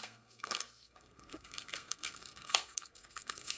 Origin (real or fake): fake